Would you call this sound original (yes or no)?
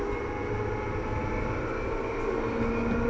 yes